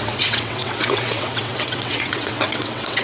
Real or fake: fake